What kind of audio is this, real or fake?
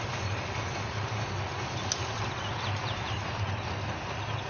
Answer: real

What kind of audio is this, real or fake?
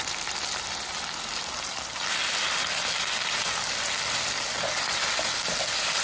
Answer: real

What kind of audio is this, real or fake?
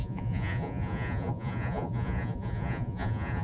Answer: fake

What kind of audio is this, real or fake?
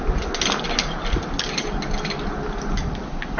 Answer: real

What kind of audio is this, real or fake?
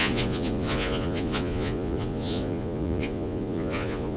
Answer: fake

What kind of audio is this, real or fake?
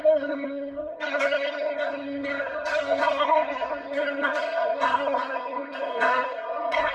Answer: fake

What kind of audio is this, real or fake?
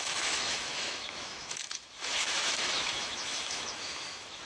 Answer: fake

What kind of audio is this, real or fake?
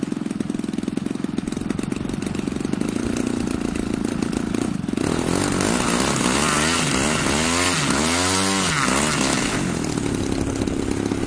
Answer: real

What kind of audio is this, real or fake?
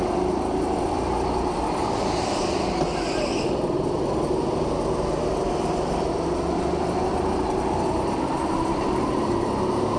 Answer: real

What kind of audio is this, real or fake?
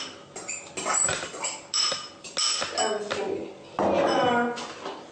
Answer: real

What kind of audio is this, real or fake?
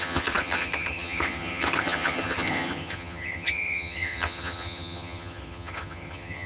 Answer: fake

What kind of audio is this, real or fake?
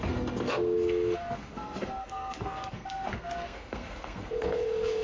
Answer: fake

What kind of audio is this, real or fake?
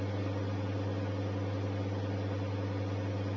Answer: real